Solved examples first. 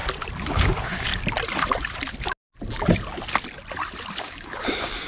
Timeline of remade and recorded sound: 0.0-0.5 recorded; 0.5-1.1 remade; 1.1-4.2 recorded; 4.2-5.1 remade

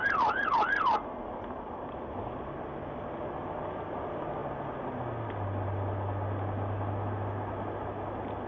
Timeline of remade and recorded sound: 0.0-8.5 recorded

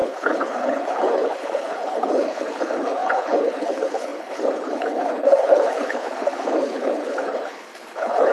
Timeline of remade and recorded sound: 0.0-8.3 remade

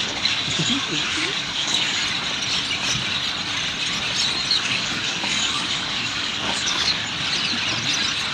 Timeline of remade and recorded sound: 0.0-2.0 remade; 2.0-4.5 recorded; 4.5-7.0 remade; 7.0-8.3 recorded

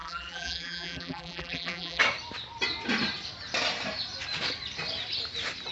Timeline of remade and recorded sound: 0.0-2.0 remade; 2.0-5.7 recorded

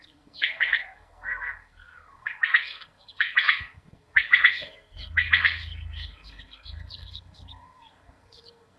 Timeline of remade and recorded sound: 0.0-8.8 remade